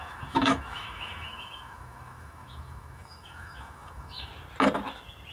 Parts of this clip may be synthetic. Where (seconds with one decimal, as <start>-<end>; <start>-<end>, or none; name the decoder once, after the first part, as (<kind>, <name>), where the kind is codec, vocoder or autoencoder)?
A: 0.0-4.3 (autoencoder, DAC-VAE)